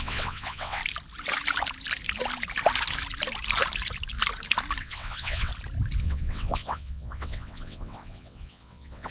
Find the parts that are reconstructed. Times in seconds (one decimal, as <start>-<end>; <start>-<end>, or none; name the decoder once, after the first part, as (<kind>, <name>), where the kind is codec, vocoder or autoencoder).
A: 0.0-0.8 (vocoder, WaveNeXt); 4.8-5.5; 6.0-9.1